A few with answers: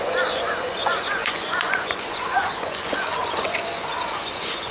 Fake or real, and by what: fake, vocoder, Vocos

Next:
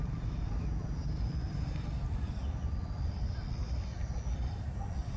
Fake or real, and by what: real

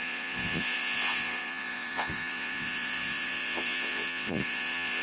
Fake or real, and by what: fake, vocoder, Vocos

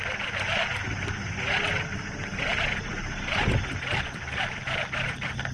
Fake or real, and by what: real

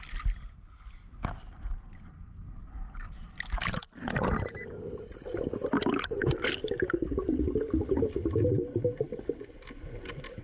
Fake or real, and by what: real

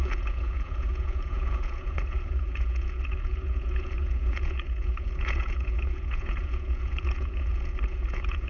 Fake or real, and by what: fake, vocoder, Vocos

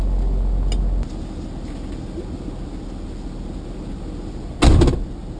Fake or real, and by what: real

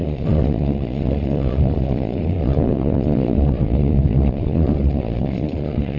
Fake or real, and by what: fake, vocoder, Vocos